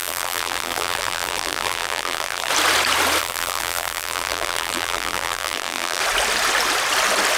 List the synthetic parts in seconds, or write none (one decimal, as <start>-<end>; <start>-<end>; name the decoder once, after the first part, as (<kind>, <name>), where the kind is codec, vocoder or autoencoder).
0.0-2.5 (vocoder, BigVGAN v2); 3.2-6.0